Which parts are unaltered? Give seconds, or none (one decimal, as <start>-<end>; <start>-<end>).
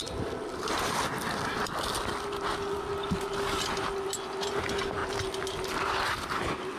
0.0-6.8